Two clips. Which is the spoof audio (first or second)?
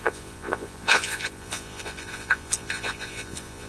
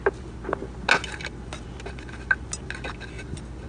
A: first